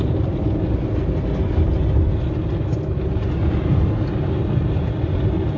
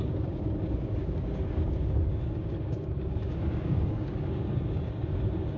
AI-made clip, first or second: second